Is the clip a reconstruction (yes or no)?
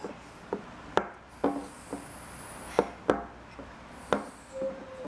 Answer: no